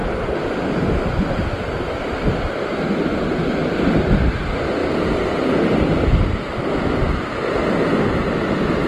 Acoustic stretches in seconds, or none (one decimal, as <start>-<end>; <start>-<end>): 0.0-8.9